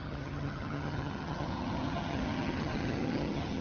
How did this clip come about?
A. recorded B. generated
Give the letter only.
B